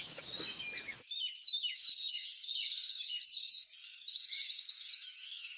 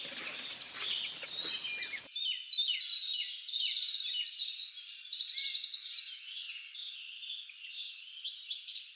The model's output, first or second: first